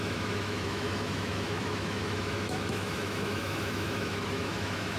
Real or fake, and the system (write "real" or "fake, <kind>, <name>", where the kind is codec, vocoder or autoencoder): fake, autoencoder, DAC-VAE